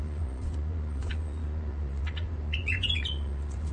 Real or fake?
fake